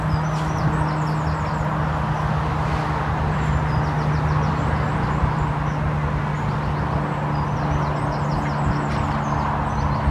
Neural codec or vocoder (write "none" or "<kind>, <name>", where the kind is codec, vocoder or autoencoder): none